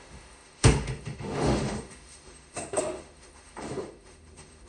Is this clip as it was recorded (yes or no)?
no